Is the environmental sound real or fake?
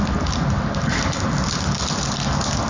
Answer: real